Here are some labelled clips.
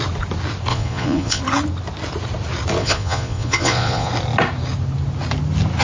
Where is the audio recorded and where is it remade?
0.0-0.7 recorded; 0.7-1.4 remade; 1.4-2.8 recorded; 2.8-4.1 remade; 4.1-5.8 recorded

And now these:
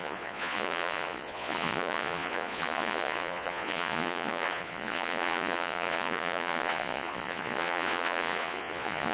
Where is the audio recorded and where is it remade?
0.0-9.1 remade

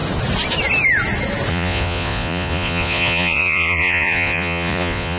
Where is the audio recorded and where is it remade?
0.0-1.5 recorded; 1.5-5.2 remade

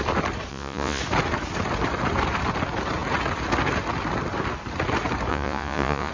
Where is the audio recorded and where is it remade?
0.0-0.5 recorded; 0.5-1.0 remade; 1.0-5.3 recorded; 5.3-6.1 remade

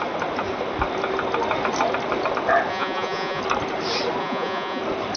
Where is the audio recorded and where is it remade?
0.0-2.7 recorded; 2.7-3.4 remade; 3.4-4.2 recorded; 4.2-4.8 remade; 4.8-5.2 recorded

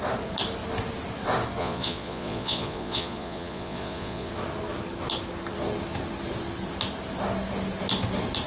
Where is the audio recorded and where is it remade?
0.0-1.6 recorded; 1.6-4.3 remade; 4.3-8.5 recorded

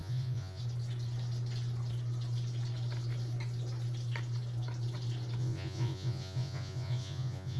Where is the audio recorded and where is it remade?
0.0-0.6 remade; 0.6-5.4 recorded; 5.4-7.6 remade